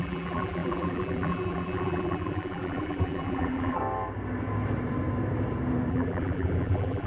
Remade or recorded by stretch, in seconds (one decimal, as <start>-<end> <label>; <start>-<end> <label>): 0.0-3.8 remade; 3.8-5.9 recorded; 5.9-7.1 remade